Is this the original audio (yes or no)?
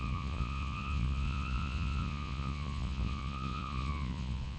no